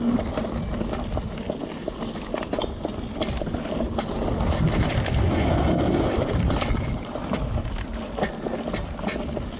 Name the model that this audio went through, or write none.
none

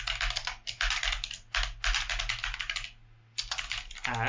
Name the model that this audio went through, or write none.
none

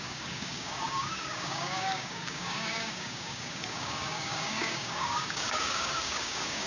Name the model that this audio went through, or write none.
codec, DAC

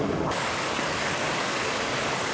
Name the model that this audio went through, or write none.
codec, DAC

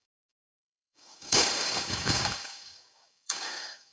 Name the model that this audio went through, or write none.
codec, DAC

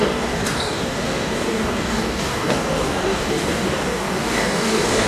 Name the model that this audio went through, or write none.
codec, DAC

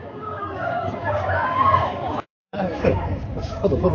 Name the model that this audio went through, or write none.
codec, DAC